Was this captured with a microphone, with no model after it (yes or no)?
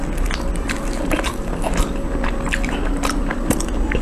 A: yes